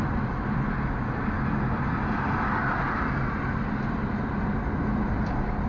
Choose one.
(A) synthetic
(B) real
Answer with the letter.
B